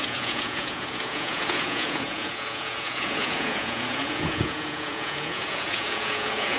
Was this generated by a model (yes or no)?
yes